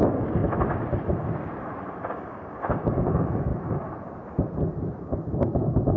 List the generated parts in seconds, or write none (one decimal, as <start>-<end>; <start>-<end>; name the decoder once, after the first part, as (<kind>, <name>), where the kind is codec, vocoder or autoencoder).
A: 0.0-0.4 (codec, DAC); 2.1-3.5; 5.0-6.0